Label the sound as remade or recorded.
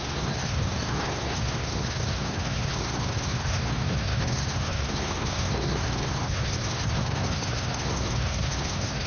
remade